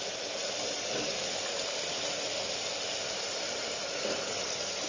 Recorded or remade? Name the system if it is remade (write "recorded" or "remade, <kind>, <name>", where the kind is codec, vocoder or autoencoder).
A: recorded